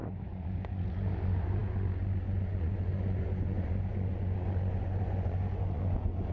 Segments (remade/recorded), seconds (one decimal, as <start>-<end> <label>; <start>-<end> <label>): 0.0-6.3 remade

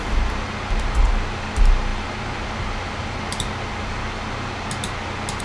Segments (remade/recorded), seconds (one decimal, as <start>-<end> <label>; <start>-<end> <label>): 0.0-5.4 recorded

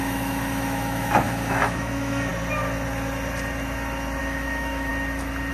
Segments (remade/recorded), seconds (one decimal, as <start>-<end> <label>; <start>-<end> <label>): 0.0-2.3 remade; 2.3-4.2 recorded; 4.2-4.9 remade; 4.9-5.5 recorded

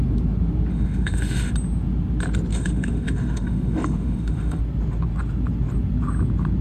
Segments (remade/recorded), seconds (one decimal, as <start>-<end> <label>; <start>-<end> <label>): 0.0-0.7 recorded; 0.7-1.5 remade; 1.5-2.5 recorded; 2.5-4.6 remade; 4.6-6.6 recorded

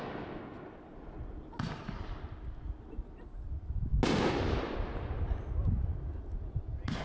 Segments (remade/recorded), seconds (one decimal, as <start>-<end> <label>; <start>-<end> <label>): 0.0-7.0 recorded